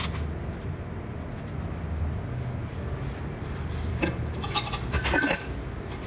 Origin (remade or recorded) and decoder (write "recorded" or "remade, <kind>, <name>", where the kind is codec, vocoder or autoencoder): recorded